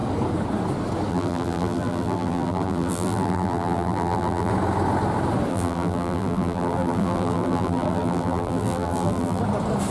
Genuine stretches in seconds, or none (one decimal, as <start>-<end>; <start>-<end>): 0.0-1.1; 4.5-5.5; 9.4-9.9